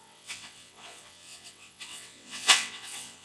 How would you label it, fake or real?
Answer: fake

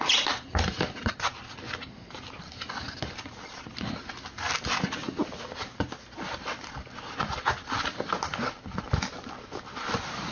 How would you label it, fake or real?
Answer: real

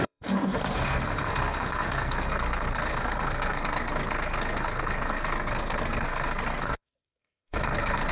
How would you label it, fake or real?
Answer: fake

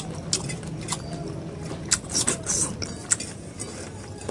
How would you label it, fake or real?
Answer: real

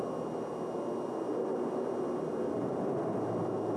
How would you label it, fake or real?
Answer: real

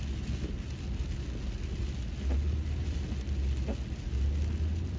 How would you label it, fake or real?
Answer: real